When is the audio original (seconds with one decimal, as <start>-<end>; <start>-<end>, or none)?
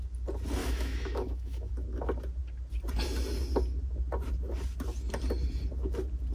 0.0-0.6; 1.7-6.3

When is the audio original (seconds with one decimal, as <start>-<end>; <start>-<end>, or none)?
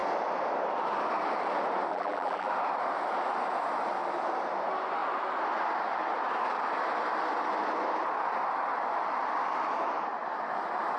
0.0-1.9; 2.5-11.0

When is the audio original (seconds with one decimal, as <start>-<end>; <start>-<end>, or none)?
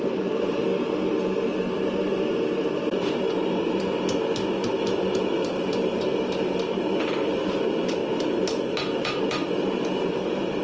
0.7-4.8; 8.0-9.2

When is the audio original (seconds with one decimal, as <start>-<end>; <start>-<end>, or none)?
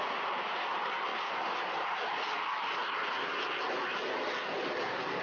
0.0-5.2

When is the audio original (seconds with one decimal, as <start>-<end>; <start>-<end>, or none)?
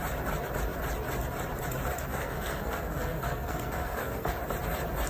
0.0-2.1; 4.3-5.1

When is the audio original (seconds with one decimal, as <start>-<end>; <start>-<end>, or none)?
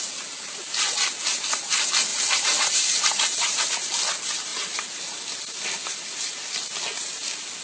0.0-2.1; 3.7-4.5; 5.0-7.6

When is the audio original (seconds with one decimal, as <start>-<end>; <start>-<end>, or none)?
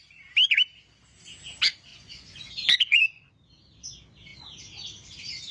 0.0-1.9; 3.3-5.5